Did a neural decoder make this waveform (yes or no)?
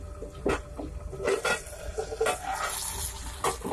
no